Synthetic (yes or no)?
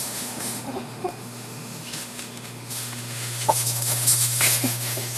yes